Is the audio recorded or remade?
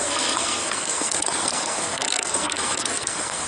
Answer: remade